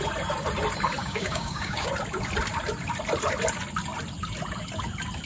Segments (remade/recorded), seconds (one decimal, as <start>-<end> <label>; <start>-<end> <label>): 0.0-1.0 recorded; 1.0-1.9 remade; 1.9-5.3 recorded